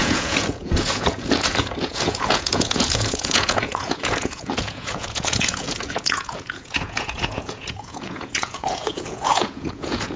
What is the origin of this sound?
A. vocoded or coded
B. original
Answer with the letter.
A